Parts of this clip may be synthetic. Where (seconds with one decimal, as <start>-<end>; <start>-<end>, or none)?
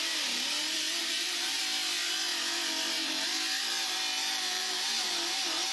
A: 1.0-1.6; 4.1-5.1